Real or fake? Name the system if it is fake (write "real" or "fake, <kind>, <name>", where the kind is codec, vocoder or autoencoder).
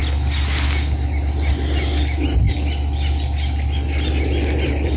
real